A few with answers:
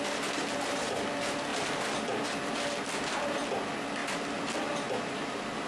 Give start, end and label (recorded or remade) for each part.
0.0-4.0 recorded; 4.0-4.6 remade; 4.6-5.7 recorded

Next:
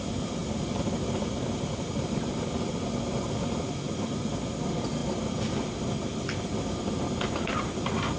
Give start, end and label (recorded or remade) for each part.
0.0-0.4 recorded; 0.4-2.7 remade; 2.7-5.0 recorded; 5.0-5.6 remade; 5.6-8.2 recorded

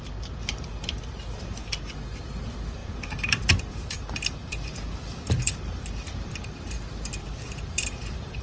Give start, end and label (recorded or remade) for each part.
0.0-2.8 recorded; 2.8-5.6 remade; 5.6-7.2 recorded; 7.2-8.4 remade

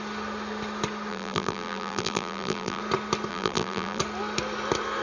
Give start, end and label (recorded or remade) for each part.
0.0-1.1 recorded; 1.1-2.8 remade; 2.8-3.3 recorded; 3.3-4.0 remade; 4.0-5.0 recorded

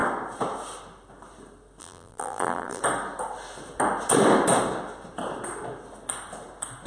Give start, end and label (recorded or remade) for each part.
0.0-1.8 recorded; 1.8-2.8 remade; 2.8-6.9 recorded